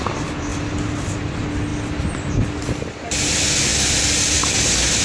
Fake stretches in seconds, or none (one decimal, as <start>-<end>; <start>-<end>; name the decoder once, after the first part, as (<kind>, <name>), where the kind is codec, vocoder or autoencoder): 1.7-2.3 (vocoder, BigVGAN v2); 3.7-4.4